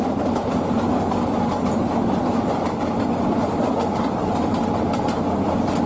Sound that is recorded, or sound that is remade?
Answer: recorded